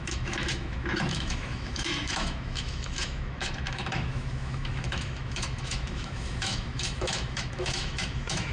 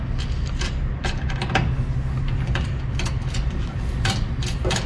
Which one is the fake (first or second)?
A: first